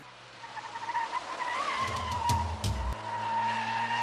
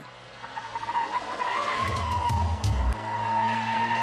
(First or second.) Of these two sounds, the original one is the first